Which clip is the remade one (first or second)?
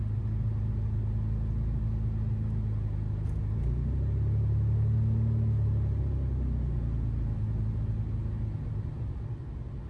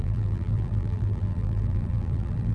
second